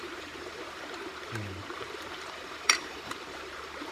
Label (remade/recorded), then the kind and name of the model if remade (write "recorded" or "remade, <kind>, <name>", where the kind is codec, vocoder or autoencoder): remade, vocoder, BigVGAN v2